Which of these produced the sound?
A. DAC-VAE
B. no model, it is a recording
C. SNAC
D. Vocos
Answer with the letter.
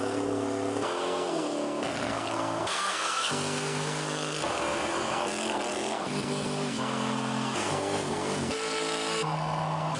C